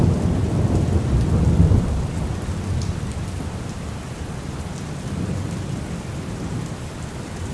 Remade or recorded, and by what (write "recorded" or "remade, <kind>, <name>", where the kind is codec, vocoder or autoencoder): recorded